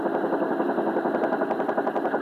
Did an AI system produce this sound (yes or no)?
no